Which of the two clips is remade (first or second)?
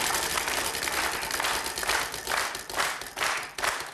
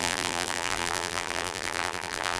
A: second